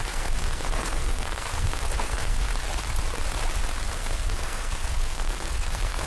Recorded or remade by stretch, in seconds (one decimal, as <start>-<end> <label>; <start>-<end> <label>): 0.0-2.5 remade; 2.5-3.9 recorded; 3.9-6.1 remade